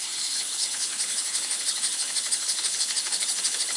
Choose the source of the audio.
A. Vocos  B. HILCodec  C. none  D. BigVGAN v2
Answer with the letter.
B